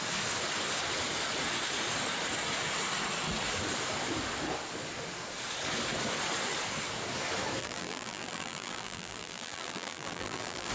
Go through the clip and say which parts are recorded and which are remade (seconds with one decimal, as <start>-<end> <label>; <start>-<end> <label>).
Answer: 0.0-7.6 recorded; 7.6-10.7 remade

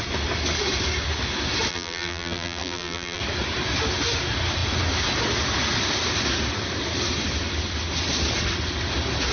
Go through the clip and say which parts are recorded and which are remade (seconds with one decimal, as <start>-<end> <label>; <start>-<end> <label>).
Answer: 0.0-1.7 recorded; 1.7-3.2 remade; 3.2-9.3 recorded

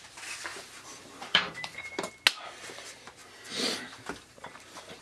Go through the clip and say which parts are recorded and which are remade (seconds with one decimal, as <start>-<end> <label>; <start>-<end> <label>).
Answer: 0.0-0.5 recorded; 0.5-2.1 remade; 2.1-3.2 recorded; 3.2-5.0 remade

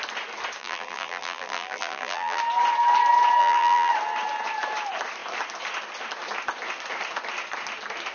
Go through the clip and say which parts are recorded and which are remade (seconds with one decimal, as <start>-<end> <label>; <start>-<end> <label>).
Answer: 0.0-0.6 recorded; 0.6-2.4 remade; 2.4-3.4 recorded; 3.4-3.9 remade; 3.9-8.1 recorded

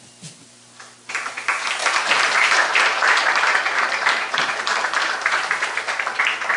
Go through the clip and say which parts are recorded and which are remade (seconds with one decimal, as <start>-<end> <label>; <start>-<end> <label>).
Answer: 0.0-1.8 recorded; 1.8-5.8 remade; 5.8-6.6 recorded

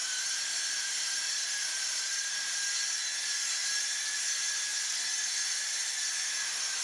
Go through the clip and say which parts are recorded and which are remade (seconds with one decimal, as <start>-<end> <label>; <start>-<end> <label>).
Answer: 0.0-2.7 remade; 2.7-3.6 recorded; 3.6-4.2 remade; 4.2-4.7 recorded; 4.7-5.9 remade; 5.9-6.8 recorded